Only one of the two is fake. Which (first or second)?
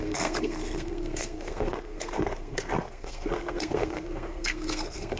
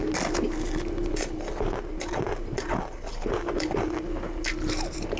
first